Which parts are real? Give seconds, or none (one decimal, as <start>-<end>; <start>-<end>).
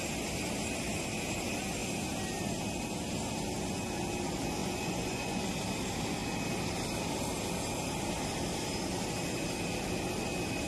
0.0-4.6; 5.4-10.7